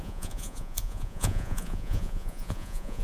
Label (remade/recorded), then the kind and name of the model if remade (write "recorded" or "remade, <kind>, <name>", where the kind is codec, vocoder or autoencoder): remade, vocoder, Vocos